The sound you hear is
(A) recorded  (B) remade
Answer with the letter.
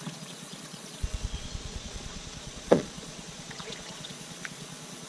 B